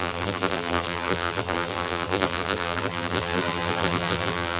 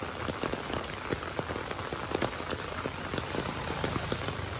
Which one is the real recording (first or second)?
second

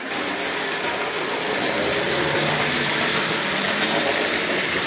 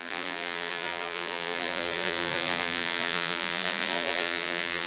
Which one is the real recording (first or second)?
first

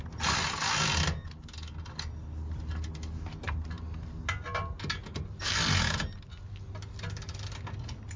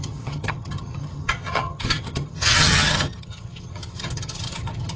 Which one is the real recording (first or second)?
first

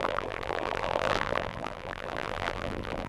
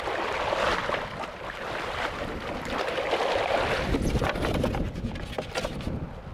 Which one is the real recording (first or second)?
second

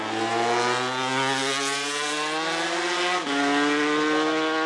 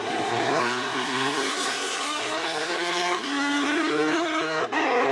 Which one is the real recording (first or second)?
first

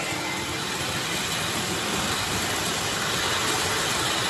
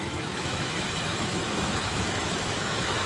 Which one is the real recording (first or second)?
first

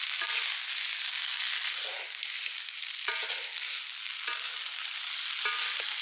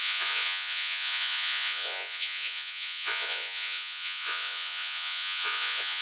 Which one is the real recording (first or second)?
first